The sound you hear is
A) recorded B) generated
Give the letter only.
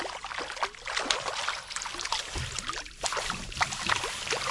A